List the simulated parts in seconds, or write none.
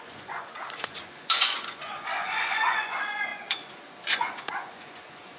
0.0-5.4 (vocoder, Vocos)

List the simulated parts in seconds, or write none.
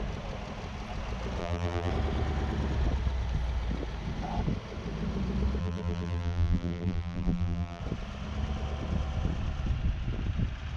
1.4-1.9 (vocoder, BigVGAN v2); 5.6-7.8